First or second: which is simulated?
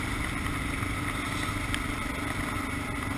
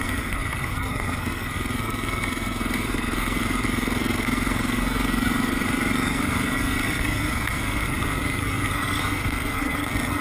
second